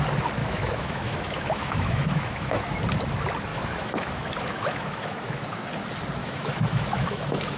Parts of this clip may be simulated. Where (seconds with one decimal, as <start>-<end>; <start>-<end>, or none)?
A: 0.4-2.6; 3.5-5.6; 6.2-7.6